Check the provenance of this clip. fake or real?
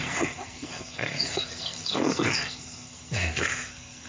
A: fake